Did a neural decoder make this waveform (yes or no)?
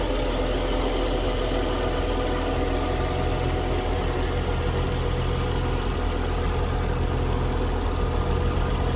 no